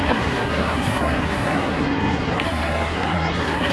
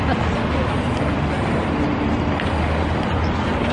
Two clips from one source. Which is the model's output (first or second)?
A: first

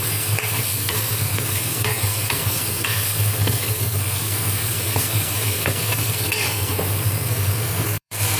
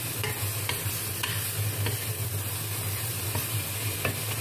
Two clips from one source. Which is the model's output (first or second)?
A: first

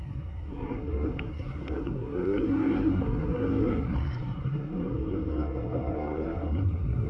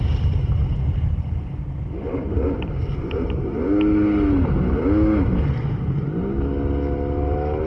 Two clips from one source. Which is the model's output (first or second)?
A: first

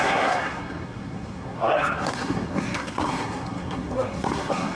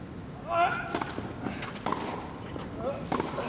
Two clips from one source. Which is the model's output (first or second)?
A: first